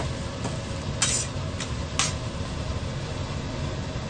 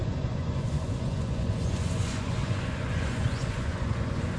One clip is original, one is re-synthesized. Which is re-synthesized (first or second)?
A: second